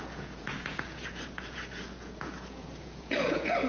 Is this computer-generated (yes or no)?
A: yes